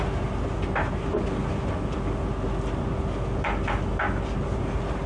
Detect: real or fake real